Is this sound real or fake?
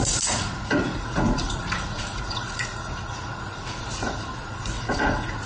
fake